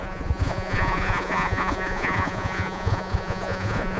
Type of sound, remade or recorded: remade